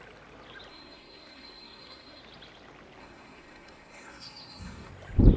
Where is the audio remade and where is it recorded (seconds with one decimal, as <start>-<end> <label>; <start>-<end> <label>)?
0.0-0.7 recorded; 0.7-2.2 remade; 2.2-3.0 recorded; 3.0-4.9 remade; 4.9-5.4 recorded

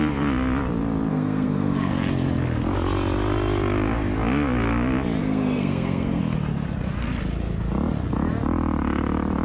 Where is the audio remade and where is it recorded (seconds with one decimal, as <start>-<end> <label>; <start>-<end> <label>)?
0.0-1.1 recorded; 1.1-1.9 remade; 1.9-5.2 recorded; 5.2-6.2 remade; 6.2-9.4 recorded

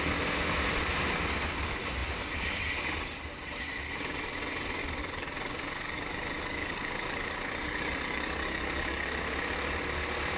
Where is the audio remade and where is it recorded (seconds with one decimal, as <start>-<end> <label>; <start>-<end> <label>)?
0.0-5.0 recorded; 5.0-9.2 remade; 9.2-10.4 recorded

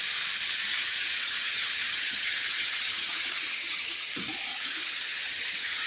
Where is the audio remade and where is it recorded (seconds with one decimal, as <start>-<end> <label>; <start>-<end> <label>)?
0.0-0.7 recorded; 0.7-4.1 remade; 4.1-4.5 recorded; 4.5-5.9 remade

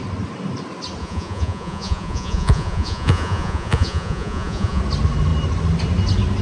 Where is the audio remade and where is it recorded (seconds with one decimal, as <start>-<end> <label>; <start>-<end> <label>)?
0.0-1.0 recorded; 1.0-4.8 remade; 4.8-6.4 recorded

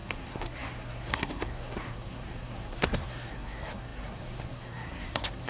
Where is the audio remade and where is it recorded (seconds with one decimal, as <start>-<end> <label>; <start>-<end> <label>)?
0.0-5.5 remade